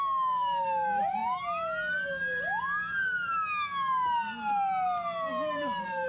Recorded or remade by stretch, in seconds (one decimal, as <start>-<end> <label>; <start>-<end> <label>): 0.0-6.1 recorded